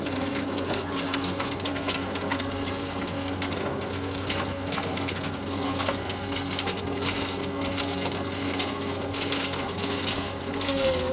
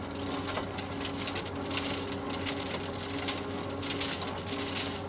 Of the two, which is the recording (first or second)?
second